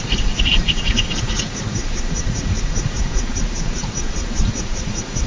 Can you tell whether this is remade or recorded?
remade